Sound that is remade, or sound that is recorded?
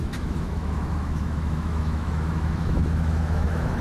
remade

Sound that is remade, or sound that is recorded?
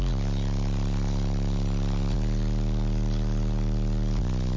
recorded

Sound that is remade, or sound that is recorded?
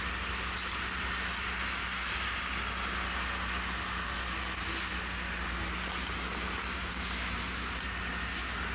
recorded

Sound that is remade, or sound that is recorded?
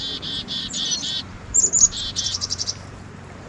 remade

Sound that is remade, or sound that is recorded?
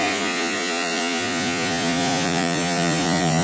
remade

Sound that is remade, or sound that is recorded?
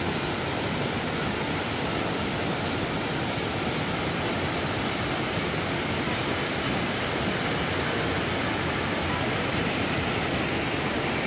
recorded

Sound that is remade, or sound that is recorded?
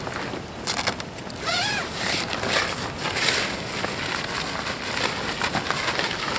recorded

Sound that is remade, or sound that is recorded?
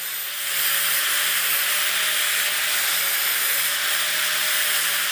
remade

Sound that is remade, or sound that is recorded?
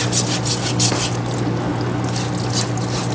recorded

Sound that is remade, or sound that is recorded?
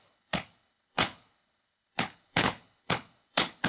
remade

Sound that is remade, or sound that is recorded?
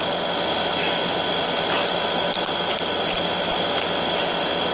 recorded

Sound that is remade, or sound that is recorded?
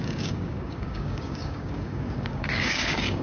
remade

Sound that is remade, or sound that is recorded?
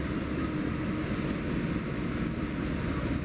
recorded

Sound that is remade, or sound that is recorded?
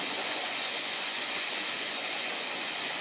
remade